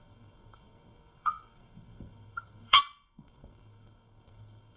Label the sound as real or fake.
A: fake